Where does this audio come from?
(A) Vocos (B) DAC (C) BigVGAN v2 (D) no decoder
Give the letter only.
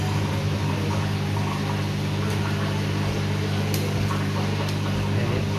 D